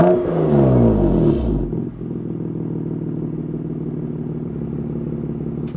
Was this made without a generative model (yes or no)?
yes